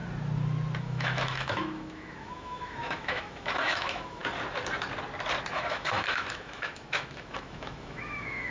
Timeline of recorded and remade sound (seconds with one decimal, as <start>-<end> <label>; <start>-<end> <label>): 0.0-0.8 recorded; 0.8-4.2 remade; 4.2-5.5 recorded; 5.5-8.5 remade